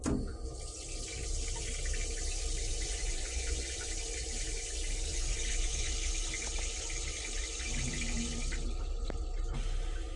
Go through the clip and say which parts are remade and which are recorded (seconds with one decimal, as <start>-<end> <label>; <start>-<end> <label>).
0.0-2.7 recorded; 2.7-3.9 remade; 3.9-5.1 recorded; 5.1-5.9 remade; 5.9-10.2 recorded